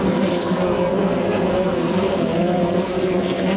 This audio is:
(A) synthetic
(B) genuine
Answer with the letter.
A